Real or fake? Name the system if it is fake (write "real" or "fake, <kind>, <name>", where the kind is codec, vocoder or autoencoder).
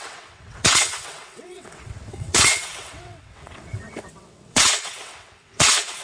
fake, vocoder, WaveNeXt